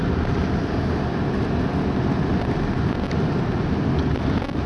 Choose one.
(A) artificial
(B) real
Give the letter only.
B